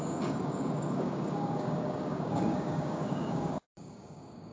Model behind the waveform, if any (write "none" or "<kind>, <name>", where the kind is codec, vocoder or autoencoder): codec, DAC